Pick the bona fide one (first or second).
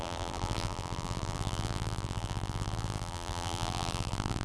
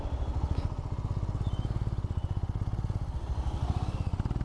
second